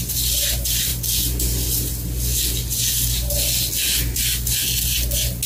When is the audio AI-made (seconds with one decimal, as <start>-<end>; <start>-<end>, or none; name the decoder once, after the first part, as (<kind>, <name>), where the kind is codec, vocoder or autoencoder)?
none